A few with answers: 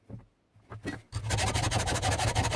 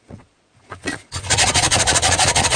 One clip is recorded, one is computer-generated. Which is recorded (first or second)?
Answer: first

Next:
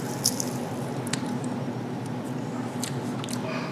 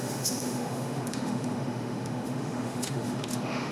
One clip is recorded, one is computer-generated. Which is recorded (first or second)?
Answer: first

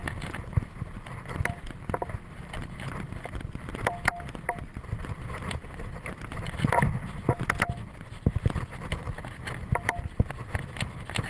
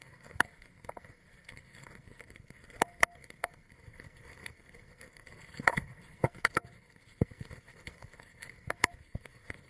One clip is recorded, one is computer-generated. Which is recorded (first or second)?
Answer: first